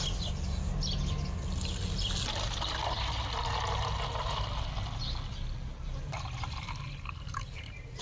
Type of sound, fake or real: real